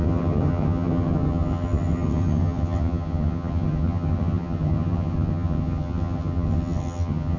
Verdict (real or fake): fake